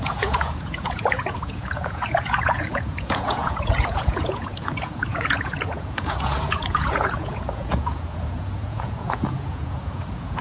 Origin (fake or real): fake